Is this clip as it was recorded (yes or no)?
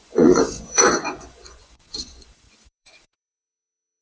no